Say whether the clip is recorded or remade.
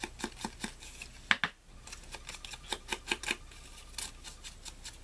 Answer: recorded